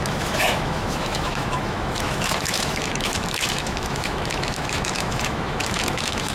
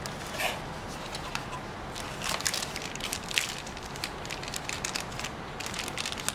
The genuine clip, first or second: second